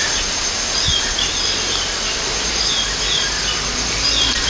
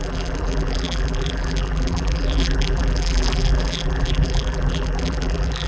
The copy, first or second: second